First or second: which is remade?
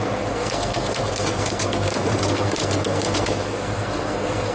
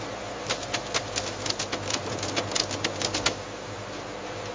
first